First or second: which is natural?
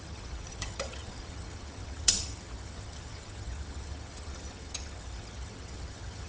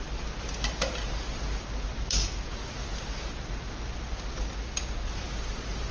second